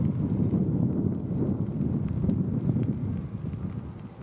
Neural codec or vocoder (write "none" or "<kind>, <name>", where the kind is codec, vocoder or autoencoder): none